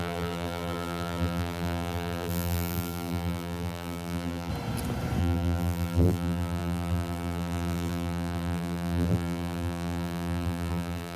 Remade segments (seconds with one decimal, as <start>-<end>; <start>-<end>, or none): 0.0-4.5; 5.2-11.2